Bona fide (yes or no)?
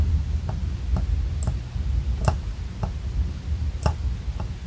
yes